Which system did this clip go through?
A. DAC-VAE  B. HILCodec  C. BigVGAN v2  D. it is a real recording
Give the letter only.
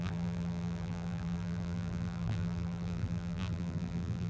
C